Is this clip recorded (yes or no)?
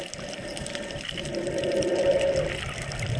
yes